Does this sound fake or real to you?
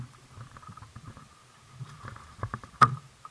real